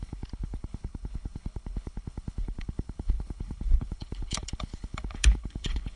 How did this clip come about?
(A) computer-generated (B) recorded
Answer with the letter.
A